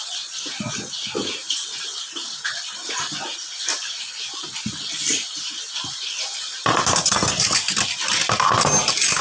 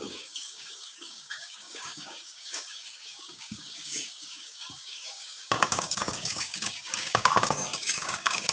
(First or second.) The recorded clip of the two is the first